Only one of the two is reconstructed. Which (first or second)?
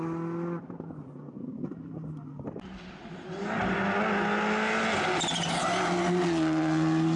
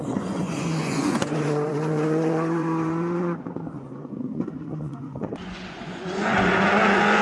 second